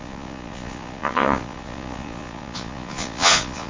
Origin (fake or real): fake